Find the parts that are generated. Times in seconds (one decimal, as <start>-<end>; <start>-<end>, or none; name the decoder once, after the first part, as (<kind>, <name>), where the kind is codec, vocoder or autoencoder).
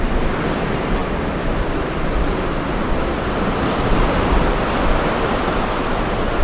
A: none